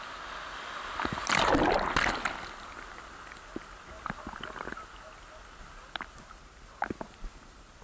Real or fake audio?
real